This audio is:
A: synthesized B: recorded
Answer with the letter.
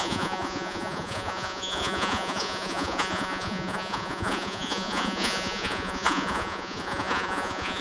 A